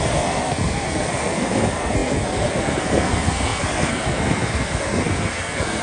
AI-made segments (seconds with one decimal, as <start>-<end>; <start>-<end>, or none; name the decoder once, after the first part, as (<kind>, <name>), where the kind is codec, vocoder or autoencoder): 0.0-5.8 (codec, SNAC)